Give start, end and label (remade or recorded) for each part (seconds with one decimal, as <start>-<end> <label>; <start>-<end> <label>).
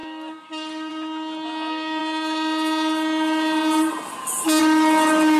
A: 0.0-5.4 recorded